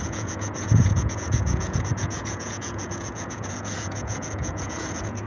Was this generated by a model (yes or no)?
yes